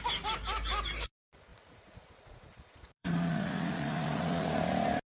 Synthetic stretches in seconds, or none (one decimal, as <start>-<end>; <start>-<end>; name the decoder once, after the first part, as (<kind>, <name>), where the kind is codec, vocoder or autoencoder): 1.5-4.6 (vocoder, Vocos)